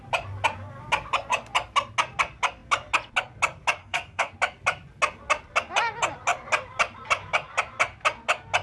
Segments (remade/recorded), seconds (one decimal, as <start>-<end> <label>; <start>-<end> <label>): 0.0-3.8 recorded; 3.8-4.3 remade; 4.3-8.6 recorded